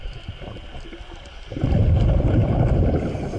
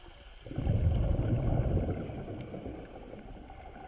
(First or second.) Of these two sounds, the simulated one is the first